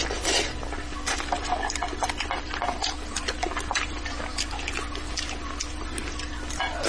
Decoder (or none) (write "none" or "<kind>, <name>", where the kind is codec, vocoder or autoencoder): none